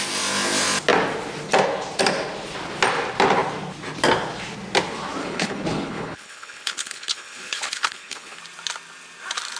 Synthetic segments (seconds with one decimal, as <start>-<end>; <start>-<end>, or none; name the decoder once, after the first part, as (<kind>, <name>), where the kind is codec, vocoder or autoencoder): 5.2-8.4 (codec, HILCodec)